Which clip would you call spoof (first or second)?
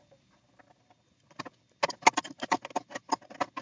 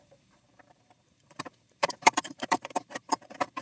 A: second